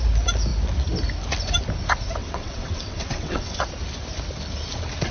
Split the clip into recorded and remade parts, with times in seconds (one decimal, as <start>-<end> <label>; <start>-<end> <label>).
0.0-2.2 recorded; 2.2-3.7 remade; 3.7-5.1 recorded